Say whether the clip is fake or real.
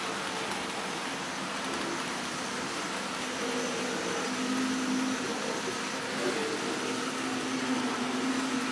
real